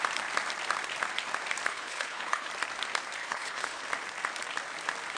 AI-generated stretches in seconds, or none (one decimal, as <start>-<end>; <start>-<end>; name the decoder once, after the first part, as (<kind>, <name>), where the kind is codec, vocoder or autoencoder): 1.7-2.5 (codec, HILCodec); 3.2-3.8